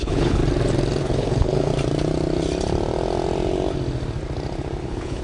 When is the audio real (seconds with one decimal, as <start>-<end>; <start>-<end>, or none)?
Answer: 0.4-1.0; 1.7-4.8